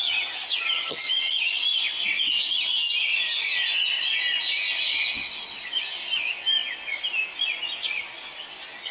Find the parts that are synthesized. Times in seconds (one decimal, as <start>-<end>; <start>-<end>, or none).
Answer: 0.0-1.6